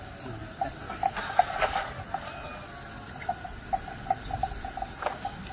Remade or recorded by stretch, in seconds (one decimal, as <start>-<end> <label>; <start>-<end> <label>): 0.0-5.5 recorded